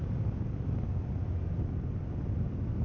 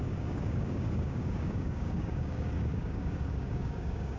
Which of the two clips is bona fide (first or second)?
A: first